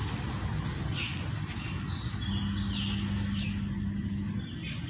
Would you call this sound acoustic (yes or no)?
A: yes